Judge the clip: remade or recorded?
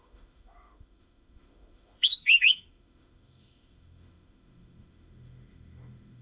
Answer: remade